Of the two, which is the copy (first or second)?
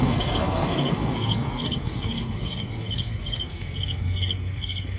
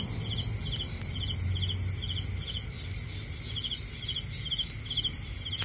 first